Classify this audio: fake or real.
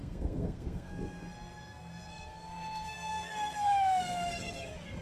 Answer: fake